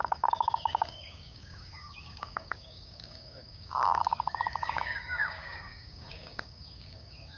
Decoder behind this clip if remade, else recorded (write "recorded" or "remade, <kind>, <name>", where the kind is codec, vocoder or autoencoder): remade, codec, DAC